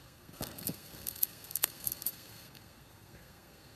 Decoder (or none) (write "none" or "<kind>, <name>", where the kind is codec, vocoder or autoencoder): codec, SNAC